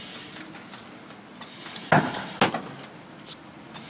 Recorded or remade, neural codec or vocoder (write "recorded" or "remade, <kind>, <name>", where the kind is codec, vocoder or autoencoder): recorded